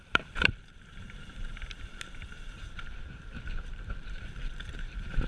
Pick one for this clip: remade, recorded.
remade